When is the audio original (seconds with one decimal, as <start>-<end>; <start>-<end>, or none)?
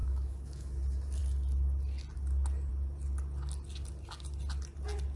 0.7-5.2